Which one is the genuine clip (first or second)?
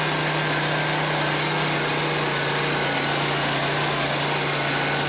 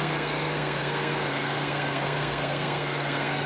first